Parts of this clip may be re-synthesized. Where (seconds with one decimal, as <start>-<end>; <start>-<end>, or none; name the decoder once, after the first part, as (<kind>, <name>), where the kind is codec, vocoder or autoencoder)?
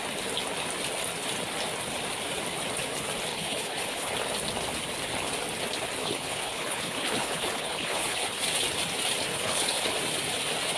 3.3-4.1 (codec, HILCodec); 6.0-8.4; 9.3-9.9